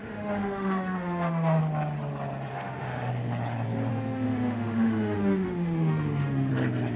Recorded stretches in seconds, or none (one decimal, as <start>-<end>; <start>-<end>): 1.6-2.5; 3.1-3.9; 6.5-7.0